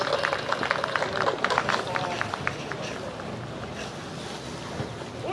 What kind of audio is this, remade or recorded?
recorded